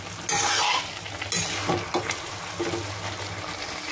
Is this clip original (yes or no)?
yes